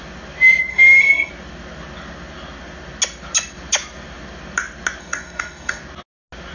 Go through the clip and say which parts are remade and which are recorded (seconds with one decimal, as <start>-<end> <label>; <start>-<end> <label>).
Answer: 0.0-0.7 recorded; 0.7-1.3 remade; 1.3-5.0 recorded; 5.0-5.8 remade; 5.8-6.5 recorded